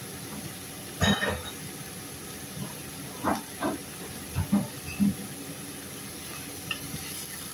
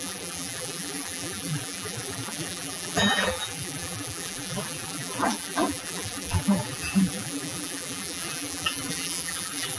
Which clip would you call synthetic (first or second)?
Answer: second